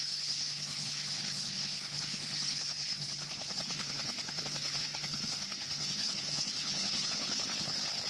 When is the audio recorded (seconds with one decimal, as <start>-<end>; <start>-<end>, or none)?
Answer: none